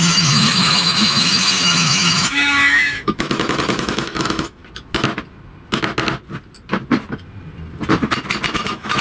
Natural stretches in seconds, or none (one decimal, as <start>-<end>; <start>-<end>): 4.6-8.5